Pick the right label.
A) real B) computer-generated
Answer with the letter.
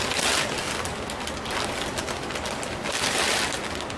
A